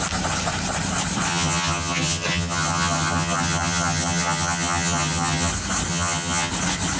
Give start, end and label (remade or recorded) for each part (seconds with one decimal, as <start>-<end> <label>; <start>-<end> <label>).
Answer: 0.0-1.3 recorded; 1.3-5.5 remade; 5.5-5.9 recorded; 5.9-6.5 remade; 6.5-7.0 recorded